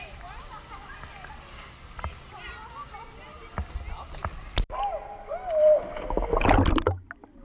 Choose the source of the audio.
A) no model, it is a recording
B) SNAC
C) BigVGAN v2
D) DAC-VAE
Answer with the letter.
A